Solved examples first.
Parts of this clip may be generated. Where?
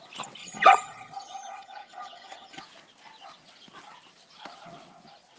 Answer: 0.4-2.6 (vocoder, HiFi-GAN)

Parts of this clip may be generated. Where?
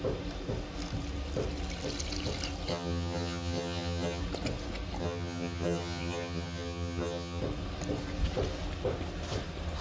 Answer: 2.7-4.2 (vocoder, HiFi-GAN); 5.0-7.4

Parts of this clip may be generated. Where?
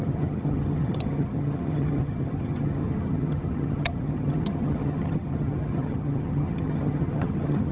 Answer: 0.0-7.7 (vocoder, HiFi-GAN)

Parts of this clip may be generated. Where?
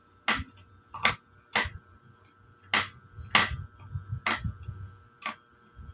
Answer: none